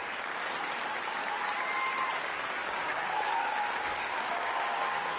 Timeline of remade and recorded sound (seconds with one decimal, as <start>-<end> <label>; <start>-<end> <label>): 0.0-2.2 recorded; 2.2-5.2 remade

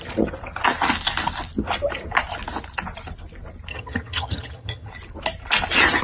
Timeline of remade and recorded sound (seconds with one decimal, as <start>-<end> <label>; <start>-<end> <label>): 0.0-3.7 recorded; 3.7-4.9 remade; 4.9-6.0 recorded